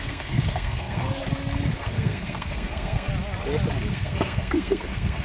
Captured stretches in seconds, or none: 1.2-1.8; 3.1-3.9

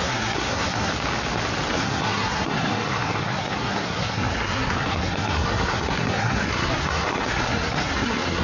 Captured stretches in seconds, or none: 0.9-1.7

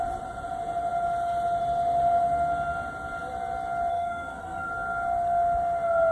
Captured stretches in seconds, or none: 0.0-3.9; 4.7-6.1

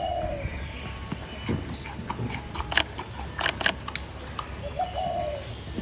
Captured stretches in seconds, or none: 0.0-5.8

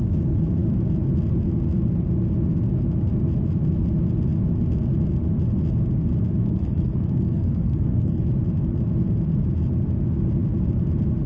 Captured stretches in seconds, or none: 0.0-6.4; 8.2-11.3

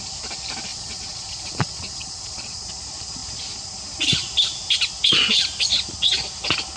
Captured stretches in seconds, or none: 0.0-0.7; 2.7-6.8

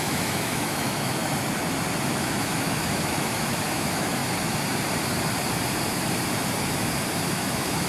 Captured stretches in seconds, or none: 1.2-2.1; 4.2-7.3